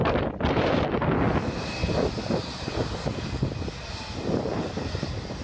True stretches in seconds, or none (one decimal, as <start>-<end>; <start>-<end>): 0.0-5.4